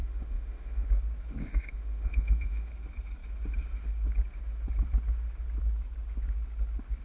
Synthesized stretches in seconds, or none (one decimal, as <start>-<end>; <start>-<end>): 0.0-0.9; 1.4-2.7